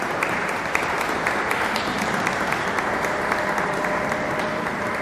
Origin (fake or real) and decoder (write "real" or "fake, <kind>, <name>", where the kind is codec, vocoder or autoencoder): fake, vocoder, BigVGAN v2